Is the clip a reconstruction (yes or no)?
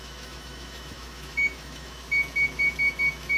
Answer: yes